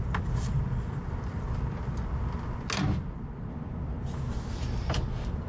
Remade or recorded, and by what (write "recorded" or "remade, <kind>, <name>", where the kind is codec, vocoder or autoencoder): recorded